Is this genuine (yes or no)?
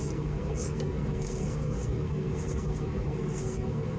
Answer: no